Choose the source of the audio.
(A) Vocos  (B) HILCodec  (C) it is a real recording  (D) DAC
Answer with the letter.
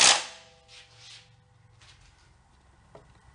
C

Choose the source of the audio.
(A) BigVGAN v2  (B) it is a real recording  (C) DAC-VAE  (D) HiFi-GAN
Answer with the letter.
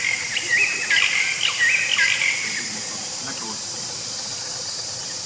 A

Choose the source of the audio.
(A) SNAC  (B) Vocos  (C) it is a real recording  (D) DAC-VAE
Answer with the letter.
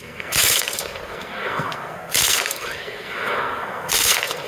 A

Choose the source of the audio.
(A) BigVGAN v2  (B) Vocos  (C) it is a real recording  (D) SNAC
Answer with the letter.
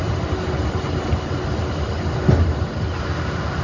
C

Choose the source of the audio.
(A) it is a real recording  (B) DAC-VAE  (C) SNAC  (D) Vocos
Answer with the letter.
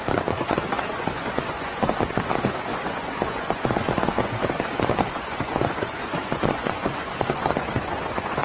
D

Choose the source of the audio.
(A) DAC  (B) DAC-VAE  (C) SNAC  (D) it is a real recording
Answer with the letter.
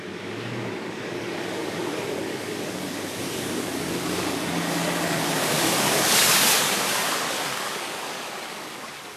A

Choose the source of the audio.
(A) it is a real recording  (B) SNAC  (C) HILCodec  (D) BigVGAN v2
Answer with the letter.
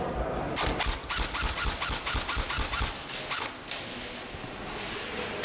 A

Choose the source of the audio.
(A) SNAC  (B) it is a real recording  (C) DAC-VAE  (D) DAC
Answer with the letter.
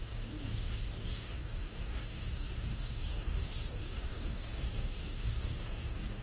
D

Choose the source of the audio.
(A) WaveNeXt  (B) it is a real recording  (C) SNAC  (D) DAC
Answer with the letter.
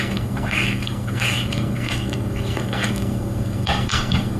C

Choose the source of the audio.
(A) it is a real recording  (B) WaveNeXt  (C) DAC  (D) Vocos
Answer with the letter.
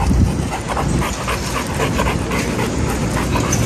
A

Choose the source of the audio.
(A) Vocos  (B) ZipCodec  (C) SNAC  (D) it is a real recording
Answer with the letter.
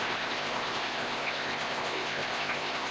B